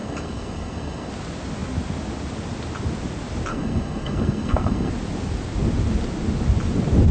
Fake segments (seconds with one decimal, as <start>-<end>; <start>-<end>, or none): 0.0-1.1; 3.5-4.9